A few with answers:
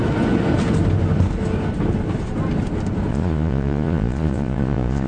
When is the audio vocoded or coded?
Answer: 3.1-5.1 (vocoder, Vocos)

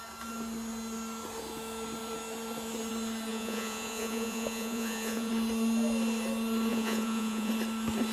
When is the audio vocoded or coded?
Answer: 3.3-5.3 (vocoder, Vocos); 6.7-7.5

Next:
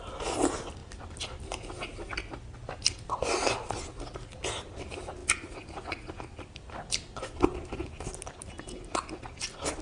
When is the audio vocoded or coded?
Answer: none

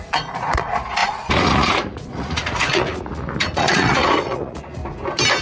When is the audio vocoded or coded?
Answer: 0.0-4.8 (vocoder, Vocos)

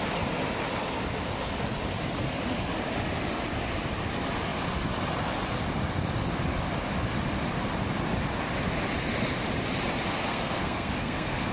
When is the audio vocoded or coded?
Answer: 10.3-11.5 (codec, SNAC)